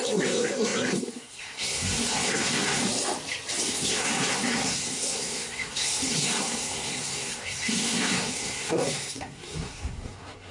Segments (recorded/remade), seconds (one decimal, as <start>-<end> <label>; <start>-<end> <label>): 0.0-2.8 remade; 2.8-3.7 recorded; 3.7-10.5 remade